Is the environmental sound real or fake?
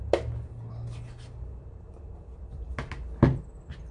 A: real